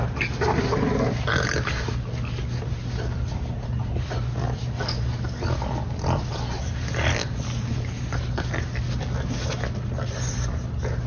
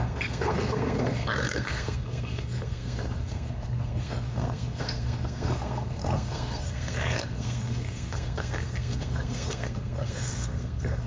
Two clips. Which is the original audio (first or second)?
first